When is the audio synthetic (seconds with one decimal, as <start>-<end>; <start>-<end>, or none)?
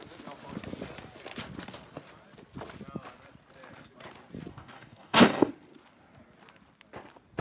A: 4.5-5.5